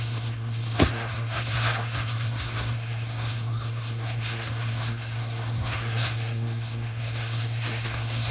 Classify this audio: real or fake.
fake